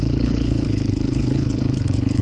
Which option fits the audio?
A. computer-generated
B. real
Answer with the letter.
A